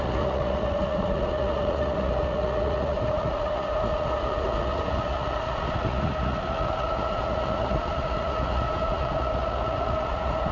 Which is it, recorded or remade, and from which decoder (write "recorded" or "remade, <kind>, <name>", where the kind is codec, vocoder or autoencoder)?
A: remade, vocoder, Vocos